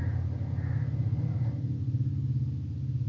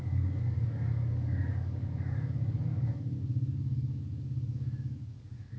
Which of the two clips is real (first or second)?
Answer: first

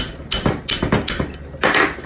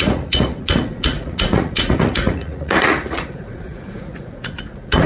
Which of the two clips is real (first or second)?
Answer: first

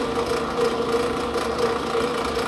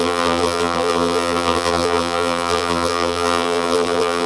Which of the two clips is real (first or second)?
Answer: first